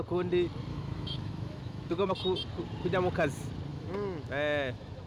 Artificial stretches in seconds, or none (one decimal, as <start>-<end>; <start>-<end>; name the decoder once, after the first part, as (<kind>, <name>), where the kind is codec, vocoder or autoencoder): 0.7-2.1 (autoencoder, DAC-VAE); 3.7-5.1